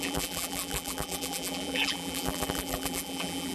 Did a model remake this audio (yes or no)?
yes